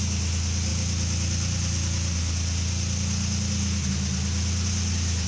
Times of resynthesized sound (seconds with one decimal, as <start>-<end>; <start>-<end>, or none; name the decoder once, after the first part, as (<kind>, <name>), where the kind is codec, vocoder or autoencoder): none